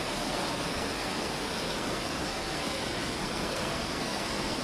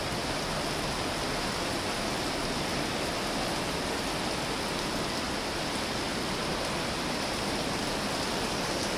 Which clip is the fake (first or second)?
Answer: first